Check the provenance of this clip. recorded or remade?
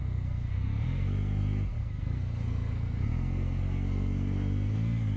remade